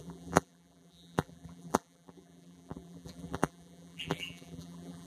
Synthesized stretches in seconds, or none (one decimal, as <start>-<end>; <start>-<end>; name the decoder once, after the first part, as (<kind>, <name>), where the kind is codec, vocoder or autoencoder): 0.0-5.1 (vocoder, BigVGAN v2)